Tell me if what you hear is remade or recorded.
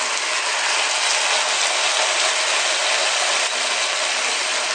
recorded